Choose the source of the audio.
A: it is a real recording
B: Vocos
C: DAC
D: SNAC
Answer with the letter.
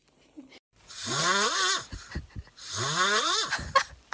A